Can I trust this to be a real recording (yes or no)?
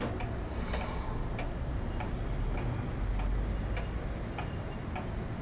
yes